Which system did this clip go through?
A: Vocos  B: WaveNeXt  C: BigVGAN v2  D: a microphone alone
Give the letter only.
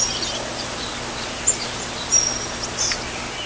D